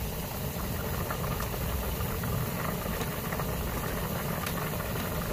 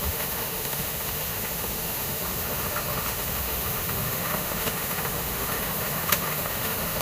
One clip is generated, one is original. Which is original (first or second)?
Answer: first